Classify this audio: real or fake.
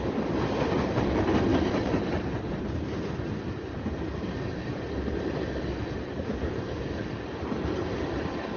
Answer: real